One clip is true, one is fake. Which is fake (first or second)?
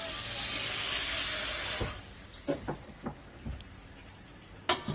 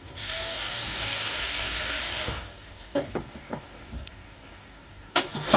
second